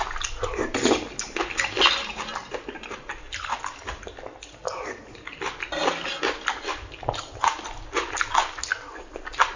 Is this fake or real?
real